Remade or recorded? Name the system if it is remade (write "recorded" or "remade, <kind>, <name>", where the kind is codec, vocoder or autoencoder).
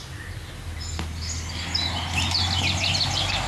recorded